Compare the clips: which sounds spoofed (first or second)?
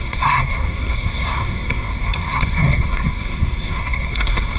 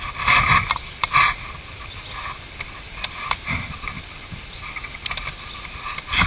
first